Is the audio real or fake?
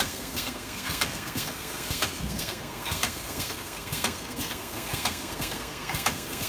fake